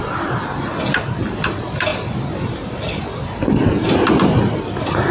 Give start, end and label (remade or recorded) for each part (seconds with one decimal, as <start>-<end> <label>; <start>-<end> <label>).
0.0-5.1 remade